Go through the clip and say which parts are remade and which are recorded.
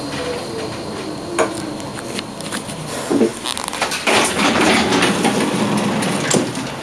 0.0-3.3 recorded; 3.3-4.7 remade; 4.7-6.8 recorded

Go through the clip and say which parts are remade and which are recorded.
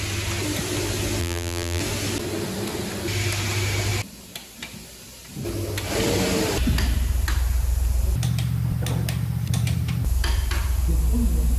0.0-1.2 recorded; 1.2-1.8 remade; 1.8-11.6 recorded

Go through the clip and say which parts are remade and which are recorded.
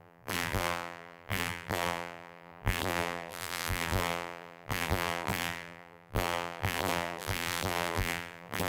0.0-8.7 remade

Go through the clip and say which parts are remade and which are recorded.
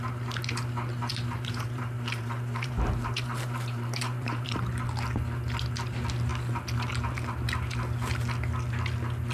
0.0-1.1 recorded; 1.1-4.6 remade; 4.6-9.3 recorded